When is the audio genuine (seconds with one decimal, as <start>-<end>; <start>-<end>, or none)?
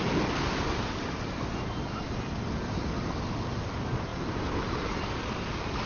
0.0-5.9